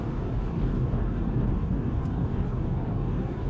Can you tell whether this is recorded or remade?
remade